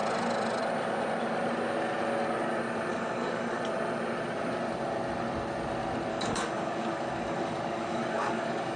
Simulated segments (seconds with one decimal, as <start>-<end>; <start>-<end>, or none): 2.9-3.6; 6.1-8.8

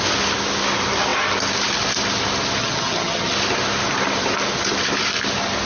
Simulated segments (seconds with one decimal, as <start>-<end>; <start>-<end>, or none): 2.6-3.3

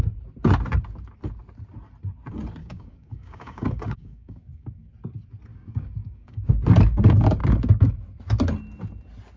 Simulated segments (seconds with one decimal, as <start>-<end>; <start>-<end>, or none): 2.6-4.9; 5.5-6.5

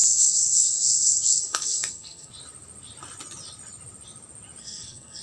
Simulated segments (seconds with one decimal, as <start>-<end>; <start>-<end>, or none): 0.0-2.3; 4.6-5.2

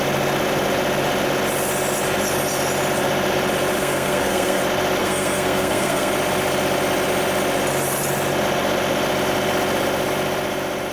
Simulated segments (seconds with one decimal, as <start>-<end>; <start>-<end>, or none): 3.8-4.6; 5.0-6.1